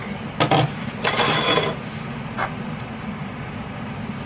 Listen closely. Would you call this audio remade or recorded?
recorded